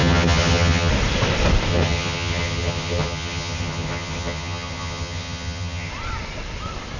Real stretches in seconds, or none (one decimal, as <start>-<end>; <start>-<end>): 0.9-1.7; 5.9-7.0